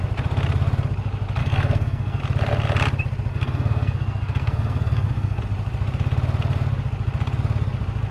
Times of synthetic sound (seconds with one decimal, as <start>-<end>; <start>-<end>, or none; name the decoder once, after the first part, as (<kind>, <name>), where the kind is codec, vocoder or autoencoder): 1.4-2.2 (codec, SNAC); 3.3-5.4